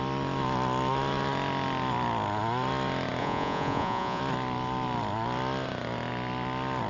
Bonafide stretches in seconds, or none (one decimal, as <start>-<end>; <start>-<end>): 0.0-3.2; 4.2-6.9